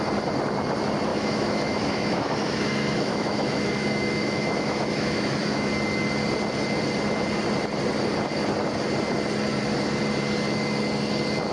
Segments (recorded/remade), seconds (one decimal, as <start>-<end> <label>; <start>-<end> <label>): 0.0-1.1 recorded; 1.1-5.7 remade; 5.7-11.5 recorded